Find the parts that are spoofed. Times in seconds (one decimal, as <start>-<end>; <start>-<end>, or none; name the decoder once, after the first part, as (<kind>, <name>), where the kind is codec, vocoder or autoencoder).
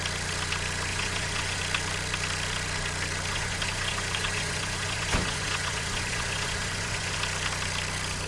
0.9-1.6 (vocoder, Vocos); 3.3-7.2